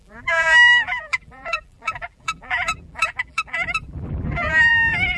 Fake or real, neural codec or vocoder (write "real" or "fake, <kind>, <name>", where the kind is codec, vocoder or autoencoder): fake, vocoder, BigVGAN v2